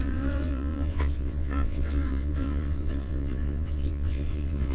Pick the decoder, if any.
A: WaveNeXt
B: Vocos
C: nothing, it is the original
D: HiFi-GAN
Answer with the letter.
A